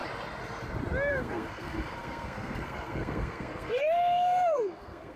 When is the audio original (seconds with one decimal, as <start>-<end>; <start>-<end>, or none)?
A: 0.0-1.1